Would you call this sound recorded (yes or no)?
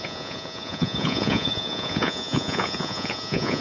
no